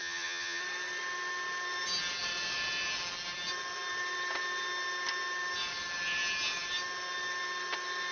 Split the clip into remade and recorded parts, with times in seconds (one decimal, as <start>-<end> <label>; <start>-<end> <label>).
0.0-0.6 remade; 0.6-8.1 recorded